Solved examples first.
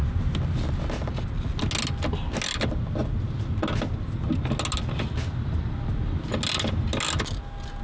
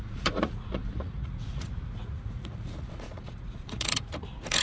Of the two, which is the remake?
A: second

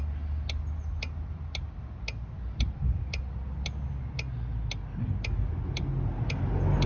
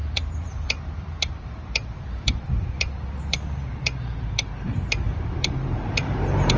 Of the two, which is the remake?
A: second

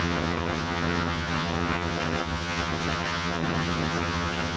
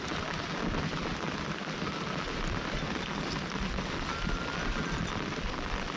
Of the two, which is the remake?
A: first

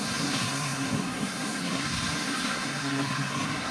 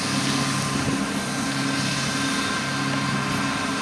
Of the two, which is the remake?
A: first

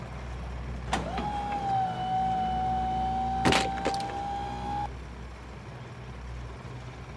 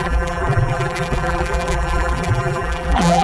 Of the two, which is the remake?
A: second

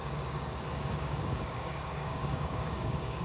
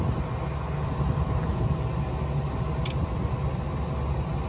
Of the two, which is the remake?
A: first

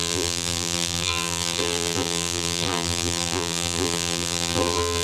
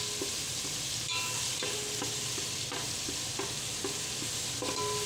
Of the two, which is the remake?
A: first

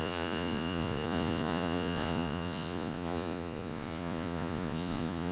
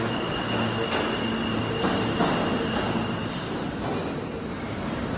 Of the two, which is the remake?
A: first